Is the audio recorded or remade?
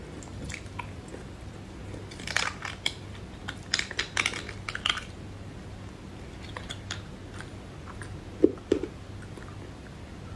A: recorded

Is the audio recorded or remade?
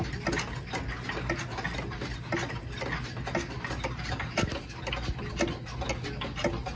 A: recorded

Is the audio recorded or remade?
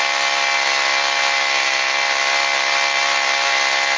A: recorded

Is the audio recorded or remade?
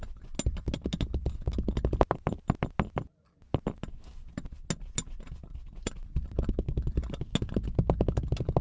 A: recorded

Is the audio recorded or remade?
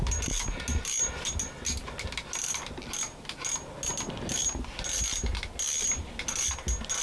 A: recorded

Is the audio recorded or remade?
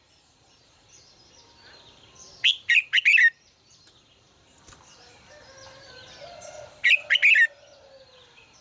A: recorded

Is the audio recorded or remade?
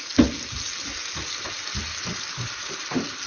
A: recorded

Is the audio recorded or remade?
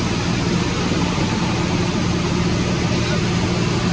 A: recorded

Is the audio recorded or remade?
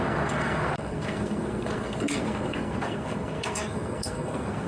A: remade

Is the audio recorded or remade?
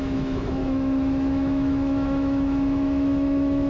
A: remade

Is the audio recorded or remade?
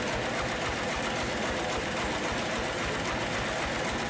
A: recorded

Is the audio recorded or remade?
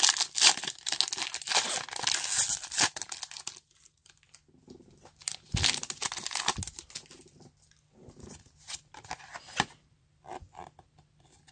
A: recorded